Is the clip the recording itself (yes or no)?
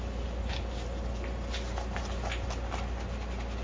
yes